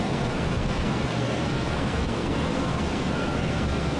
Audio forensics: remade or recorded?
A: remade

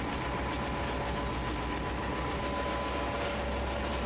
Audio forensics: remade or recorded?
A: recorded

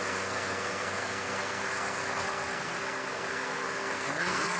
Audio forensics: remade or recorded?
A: remade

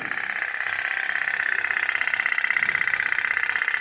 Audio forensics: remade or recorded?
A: recorded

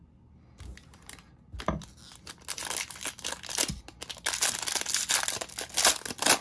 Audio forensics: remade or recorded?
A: recorded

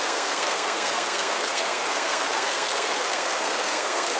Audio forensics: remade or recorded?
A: remade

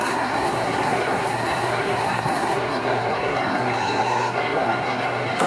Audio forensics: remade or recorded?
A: remade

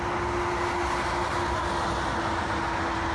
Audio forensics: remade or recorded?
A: recorded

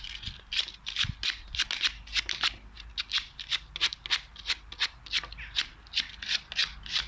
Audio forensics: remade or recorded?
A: recorded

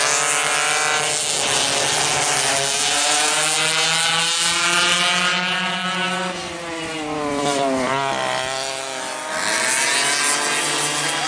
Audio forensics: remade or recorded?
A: recorded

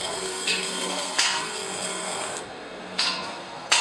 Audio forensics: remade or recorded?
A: remade